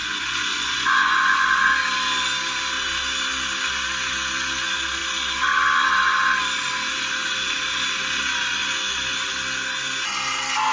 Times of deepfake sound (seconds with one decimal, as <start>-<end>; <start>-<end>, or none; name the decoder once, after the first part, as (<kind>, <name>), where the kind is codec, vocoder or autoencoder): 0.0-1.7 (vocoder, Vocos)